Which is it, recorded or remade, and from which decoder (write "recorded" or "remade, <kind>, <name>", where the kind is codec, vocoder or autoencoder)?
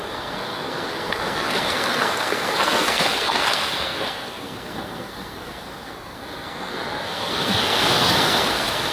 remade, codec, SNAC